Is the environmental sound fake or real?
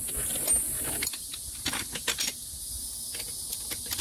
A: real